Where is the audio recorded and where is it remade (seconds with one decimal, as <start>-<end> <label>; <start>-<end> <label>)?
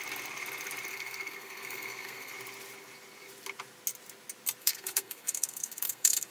0.0-0.9 recorded; 0.9-2.3 remade; 2.3-4.6 recorded; 4.6-6.3 remade